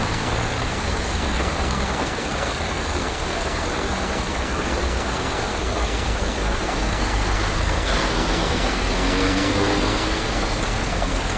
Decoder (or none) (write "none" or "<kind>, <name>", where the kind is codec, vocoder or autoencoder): codec, SNAC